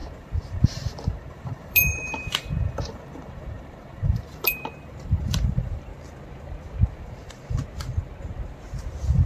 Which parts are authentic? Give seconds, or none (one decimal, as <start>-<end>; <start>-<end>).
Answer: 5.9-7.0; 7.6-9.3